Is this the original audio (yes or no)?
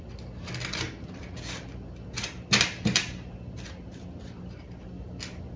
yes